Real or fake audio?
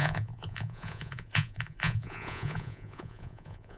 fake